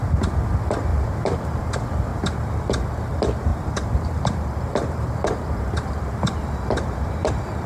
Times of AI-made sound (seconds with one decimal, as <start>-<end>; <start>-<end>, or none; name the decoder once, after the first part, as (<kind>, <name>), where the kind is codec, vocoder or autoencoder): 0.9-1.7 (vocoder, BigVGAN v2); 2.1-2.6; 3.5-7.3